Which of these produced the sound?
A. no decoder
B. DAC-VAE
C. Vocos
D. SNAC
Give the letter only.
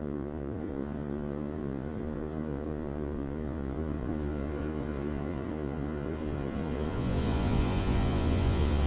C